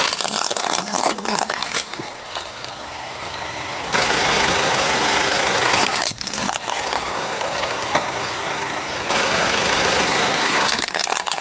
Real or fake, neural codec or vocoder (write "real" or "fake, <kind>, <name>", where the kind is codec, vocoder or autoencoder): fake, codec, SNAC